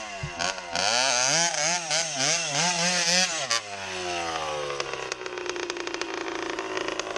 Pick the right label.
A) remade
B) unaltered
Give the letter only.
B